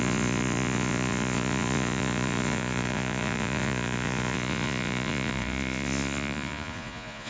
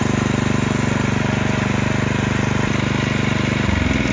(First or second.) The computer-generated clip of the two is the first